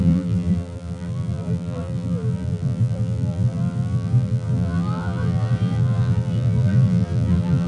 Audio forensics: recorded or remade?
remade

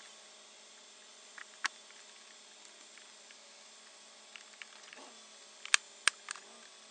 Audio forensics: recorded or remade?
recorded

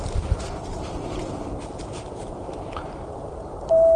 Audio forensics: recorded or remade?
remade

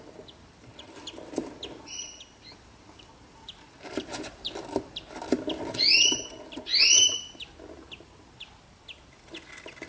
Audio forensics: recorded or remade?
remade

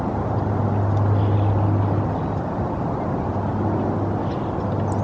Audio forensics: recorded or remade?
recorded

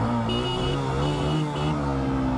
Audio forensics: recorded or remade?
recorded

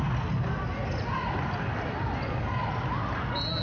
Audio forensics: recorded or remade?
recorded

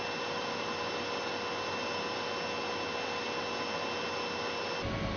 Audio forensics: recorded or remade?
recorded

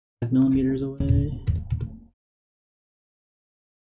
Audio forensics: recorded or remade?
recorded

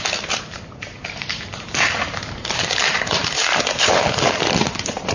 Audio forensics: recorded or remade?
remade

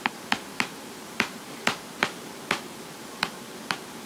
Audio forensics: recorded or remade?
remade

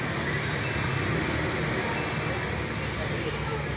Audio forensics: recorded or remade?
recorded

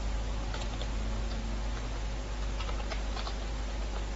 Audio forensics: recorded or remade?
recorded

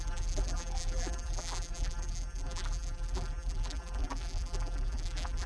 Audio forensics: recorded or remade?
remade